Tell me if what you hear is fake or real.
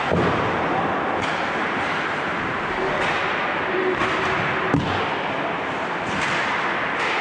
real